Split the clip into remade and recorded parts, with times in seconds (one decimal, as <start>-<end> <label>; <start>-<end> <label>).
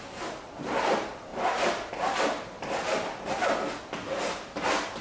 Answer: 0.0-1.3 recorded; 1.3-1.9 remade; 1.9-5.0 recorded